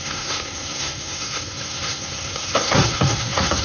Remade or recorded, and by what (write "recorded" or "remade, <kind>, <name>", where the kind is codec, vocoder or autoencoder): remade, codec, SNAC